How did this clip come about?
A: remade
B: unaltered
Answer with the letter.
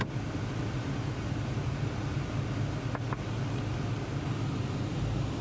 B